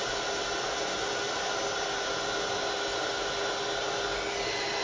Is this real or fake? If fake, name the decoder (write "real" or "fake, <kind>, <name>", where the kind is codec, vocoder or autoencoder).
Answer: real